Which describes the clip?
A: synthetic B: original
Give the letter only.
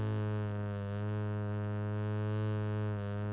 B